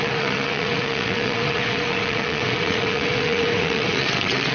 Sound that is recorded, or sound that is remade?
remade